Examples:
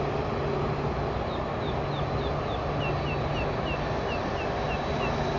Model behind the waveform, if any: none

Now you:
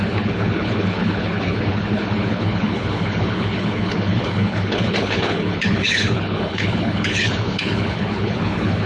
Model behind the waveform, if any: codec, HILCodec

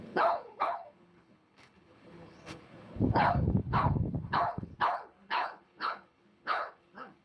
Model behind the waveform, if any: codec, HILCodec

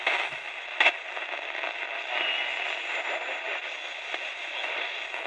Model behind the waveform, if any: none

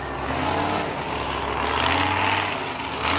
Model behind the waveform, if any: none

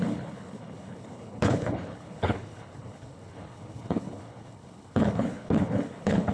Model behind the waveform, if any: codec, HILCodec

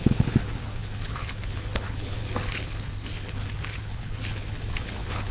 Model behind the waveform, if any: codec, HILCodec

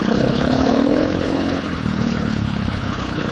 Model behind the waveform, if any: codec, HILCodec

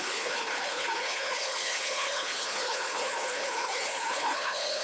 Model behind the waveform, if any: codec, HILCodec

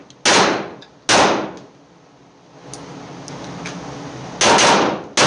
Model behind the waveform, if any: none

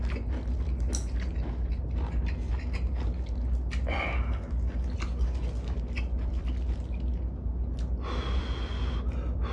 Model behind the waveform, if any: none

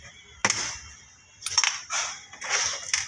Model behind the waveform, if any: none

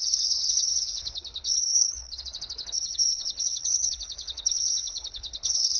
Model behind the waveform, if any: codec, HILCodec